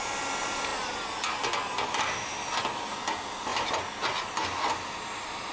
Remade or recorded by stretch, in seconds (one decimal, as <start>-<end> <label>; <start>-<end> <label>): 0.0-5.5 recorded